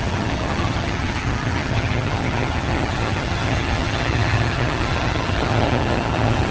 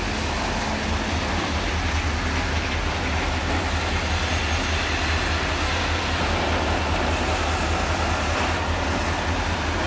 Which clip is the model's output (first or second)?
first